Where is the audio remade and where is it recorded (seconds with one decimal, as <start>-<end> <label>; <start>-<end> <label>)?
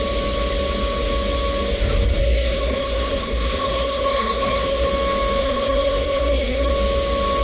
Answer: 0.0-2.2 recorded; 2.2-4.9 remade; 4.9-5.4 recorded; 5.4-6.7 remade; 6.7-7.4 recorded